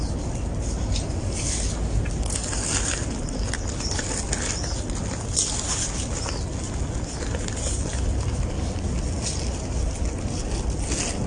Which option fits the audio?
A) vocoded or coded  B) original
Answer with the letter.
B